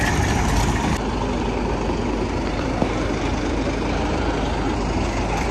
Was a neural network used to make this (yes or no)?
no